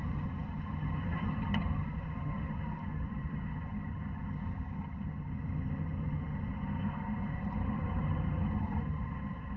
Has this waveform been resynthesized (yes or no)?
yes